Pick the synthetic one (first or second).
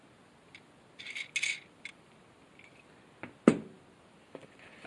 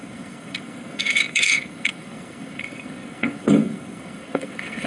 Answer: second